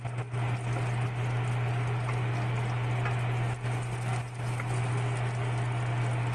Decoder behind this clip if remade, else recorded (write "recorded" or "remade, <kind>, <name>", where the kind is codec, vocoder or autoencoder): recorded